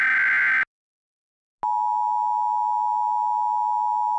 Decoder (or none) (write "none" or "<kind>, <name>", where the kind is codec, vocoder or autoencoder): none